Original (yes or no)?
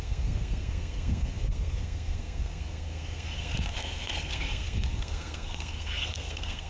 no